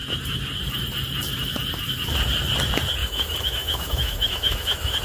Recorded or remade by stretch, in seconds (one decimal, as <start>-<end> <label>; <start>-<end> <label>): 0.0-3.0 recorded; 3.0-5.0 remade